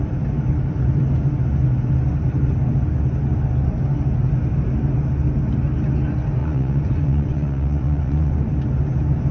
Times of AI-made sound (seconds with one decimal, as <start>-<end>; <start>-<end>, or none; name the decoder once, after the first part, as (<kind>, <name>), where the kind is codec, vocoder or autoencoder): 6.4-8.3 (vocoder, Vocos)